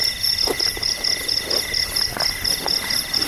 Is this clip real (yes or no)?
yes